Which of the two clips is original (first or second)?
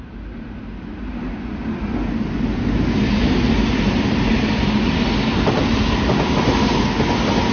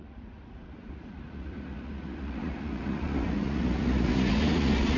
first